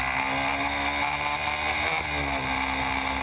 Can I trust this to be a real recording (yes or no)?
yes